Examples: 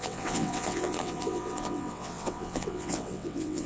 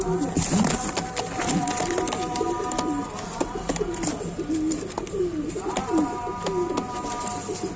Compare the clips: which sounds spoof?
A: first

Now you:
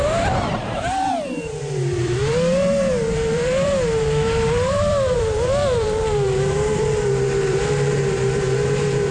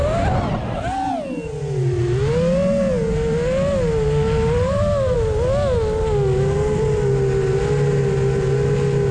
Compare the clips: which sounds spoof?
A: first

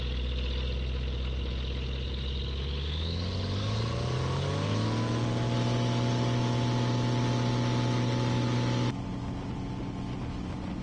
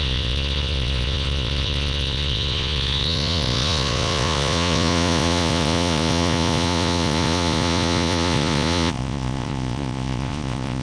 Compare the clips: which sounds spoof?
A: second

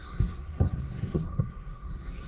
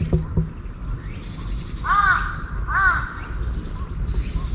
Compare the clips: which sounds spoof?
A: first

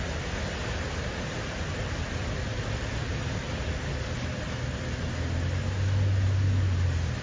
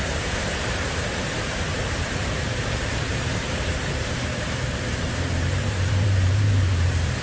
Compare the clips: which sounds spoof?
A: second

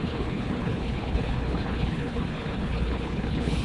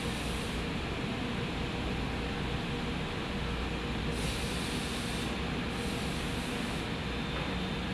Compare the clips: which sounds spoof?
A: first